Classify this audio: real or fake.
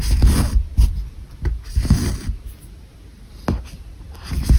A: real